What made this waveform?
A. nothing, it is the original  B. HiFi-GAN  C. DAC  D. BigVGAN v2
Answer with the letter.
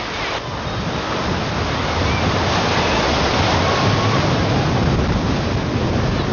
A